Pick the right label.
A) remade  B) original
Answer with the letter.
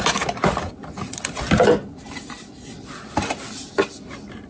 B